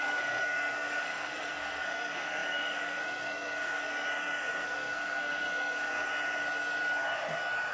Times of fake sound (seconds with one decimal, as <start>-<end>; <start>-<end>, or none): 0.0-6.1